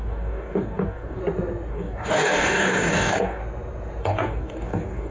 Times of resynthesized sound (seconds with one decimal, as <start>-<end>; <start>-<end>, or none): 0.0-1.2; 1.7-3.4; 4.0-5.1